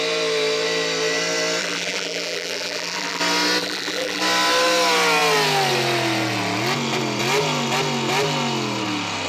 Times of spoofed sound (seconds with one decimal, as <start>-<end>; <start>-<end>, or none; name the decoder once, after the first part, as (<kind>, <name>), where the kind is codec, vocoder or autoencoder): 1.6-3.2 (vocoder, BigVGAN v2); 3.6-4.2